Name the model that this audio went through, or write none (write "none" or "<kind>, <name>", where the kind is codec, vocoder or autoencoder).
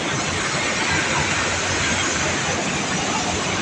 none